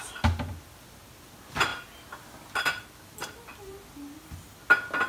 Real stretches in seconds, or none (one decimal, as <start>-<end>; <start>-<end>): 0.0-5.1